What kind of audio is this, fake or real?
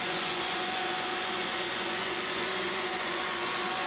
fake